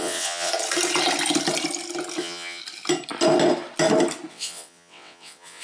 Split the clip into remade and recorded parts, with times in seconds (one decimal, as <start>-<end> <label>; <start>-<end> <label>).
0.0-0.5 remade; 0.5-2.2 recorded; 2.2-2.6 remade; 2.6-4.3 recorded; 4.3-5.6 remade